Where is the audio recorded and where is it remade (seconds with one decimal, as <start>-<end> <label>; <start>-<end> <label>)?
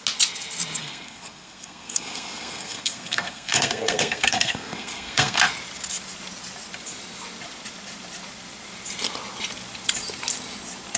0.0-0.8 recorded; 0.8-5.4 remade; 5.4-11.0 recorded